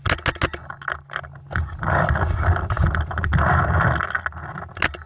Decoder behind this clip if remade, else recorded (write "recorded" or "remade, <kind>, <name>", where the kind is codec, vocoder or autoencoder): recorded